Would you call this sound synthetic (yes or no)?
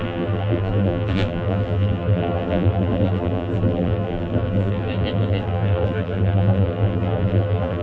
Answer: yes